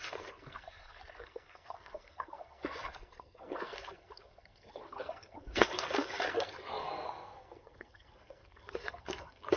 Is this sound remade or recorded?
remade